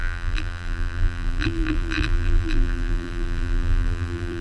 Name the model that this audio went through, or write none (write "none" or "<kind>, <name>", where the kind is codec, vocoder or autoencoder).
vocoder, BigVGAN v2